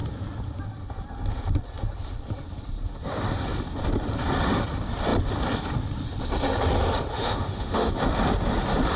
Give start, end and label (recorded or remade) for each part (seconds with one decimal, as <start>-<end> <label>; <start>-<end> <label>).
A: 0.0-7.1 recorded; 7.1-7.9 remade; 7.9-9.0 recorded

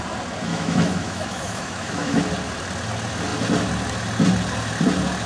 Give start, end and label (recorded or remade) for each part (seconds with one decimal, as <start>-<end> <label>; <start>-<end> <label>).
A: 0.0-0.5 recorded; 0.5-2.2 remade; 2.2-5.3 recorded

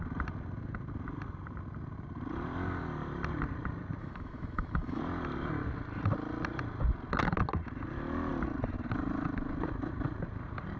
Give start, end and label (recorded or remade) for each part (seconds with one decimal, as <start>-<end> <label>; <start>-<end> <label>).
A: 0.0-4.0 recorded; 4.0-5.0 remade; 5.0-10.8 recorded

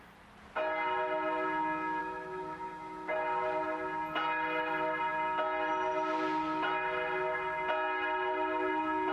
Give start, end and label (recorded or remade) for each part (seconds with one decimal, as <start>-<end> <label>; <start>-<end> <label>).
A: 0.0-2.0 recorded; 2.0-3.1 remade; 3.1-9.1 recorded